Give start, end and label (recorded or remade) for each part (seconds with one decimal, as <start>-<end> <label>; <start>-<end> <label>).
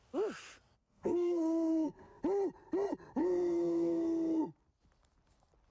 0.0-0.8 recorded; 0.8-2.2 remade; 2.2-3.2 recorded; 3.2-4.4 remade; 4.4-5.7 recorded